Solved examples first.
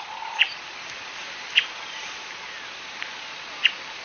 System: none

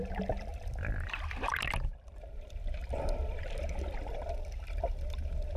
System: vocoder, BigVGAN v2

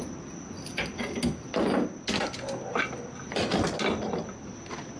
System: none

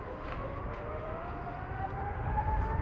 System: autoencoder, DAC-VAE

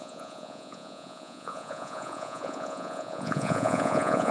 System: vocoder, Vocos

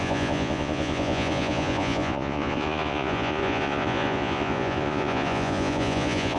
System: vocoder, Vocos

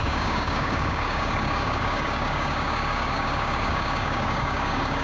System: codec, DAC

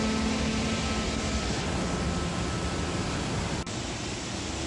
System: none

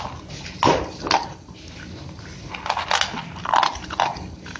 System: none